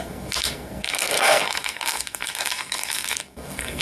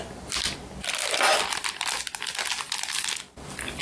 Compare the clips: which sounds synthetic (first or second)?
first